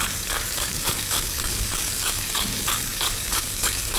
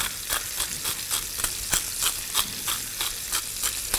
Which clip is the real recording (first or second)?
second